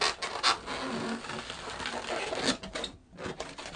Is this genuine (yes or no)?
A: yes